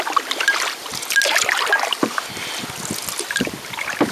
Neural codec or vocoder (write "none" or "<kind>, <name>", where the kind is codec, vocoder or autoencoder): none